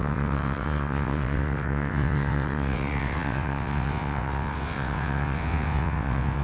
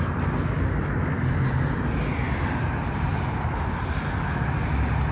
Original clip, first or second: second